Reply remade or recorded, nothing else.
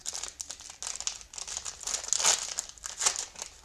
recorded